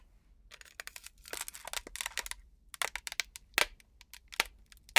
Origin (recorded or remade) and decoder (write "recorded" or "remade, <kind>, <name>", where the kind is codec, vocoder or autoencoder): recorded